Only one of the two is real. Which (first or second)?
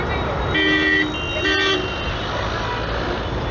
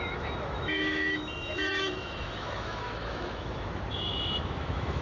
first